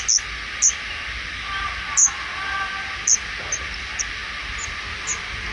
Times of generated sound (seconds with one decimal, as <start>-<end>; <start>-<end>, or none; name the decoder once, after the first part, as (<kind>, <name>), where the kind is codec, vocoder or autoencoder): none